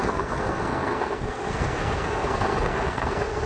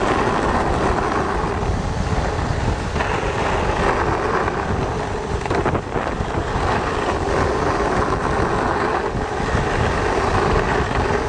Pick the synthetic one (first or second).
first